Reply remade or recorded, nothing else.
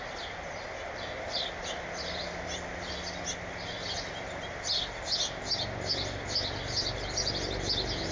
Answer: recorded